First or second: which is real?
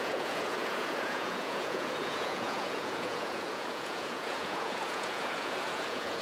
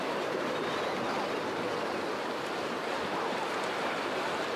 second